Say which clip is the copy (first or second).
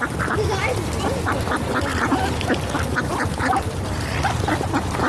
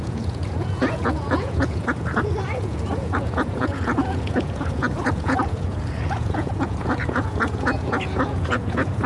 second